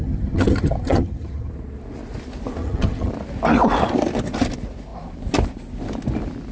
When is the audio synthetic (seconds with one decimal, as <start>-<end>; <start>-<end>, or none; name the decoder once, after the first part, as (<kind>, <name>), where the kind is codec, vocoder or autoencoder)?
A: 0.0-1.5 (vocoder, HiFi-GAN); 2.6-3.1